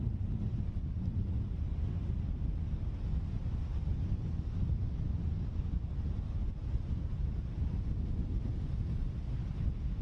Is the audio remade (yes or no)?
no